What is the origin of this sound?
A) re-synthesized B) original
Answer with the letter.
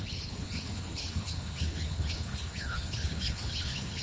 A